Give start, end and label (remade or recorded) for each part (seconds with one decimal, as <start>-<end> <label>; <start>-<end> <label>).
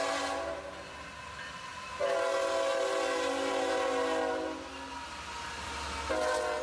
0.0-6.6 recorded